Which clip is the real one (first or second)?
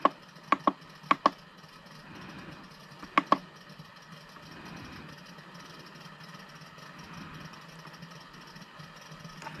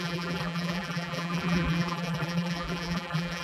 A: first